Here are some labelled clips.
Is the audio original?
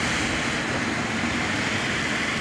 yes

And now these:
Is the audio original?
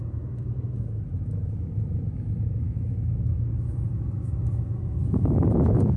no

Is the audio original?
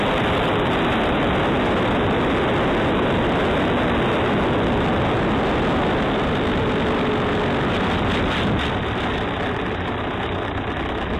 yes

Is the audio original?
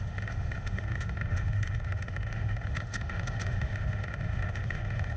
no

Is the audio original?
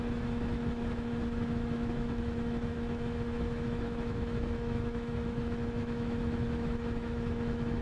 no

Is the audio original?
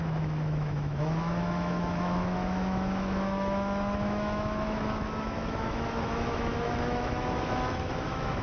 no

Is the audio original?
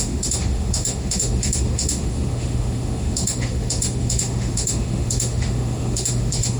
no